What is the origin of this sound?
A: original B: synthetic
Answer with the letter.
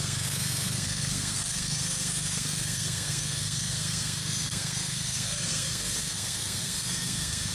B